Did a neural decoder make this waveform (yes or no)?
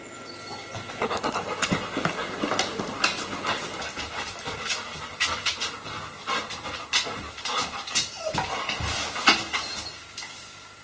no